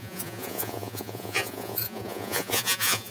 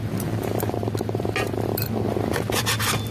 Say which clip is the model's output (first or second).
first